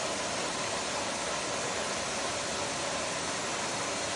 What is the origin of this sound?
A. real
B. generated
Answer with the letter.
A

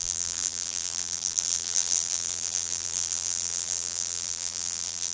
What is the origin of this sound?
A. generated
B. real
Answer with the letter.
A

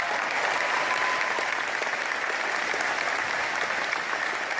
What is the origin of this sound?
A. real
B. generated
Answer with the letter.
A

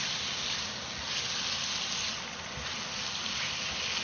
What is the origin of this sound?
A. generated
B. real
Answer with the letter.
B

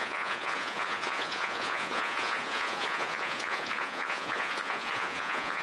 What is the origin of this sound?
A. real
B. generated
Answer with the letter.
B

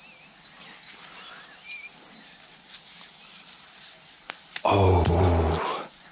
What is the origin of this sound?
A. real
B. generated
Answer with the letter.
A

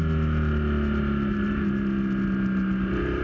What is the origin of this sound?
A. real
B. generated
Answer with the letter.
A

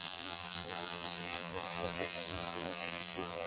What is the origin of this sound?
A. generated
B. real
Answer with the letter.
A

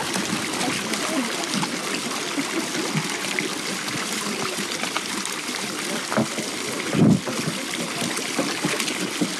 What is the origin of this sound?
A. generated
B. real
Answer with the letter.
B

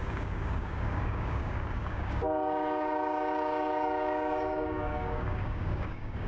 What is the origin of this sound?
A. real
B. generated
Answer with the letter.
B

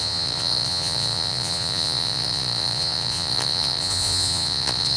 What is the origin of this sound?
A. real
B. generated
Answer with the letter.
B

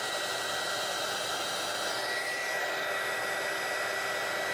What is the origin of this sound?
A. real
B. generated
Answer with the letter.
A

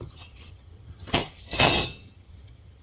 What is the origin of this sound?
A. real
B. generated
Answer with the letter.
B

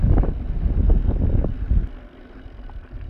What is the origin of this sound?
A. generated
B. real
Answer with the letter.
B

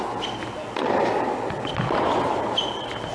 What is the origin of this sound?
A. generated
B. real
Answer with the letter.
B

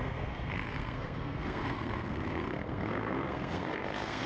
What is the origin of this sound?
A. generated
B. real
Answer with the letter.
A